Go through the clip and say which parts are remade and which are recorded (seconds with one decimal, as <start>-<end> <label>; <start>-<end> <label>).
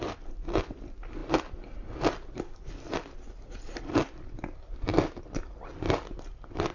0.0-1.2 recorded; 1.2-5.2 remade; 5.2-6.7 recorded